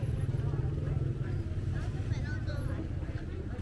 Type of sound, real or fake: real